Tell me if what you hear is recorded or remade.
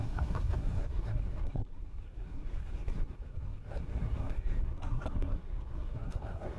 remade